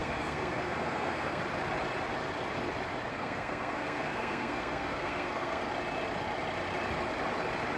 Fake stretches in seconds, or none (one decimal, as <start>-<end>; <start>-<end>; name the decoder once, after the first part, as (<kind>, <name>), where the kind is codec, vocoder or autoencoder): 0.0-1.4 (codec, SNAC); 3.1-5.6